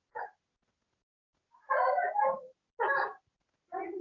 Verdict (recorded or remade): recorded